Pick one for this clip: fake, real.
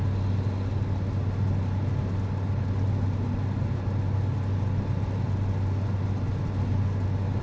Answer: real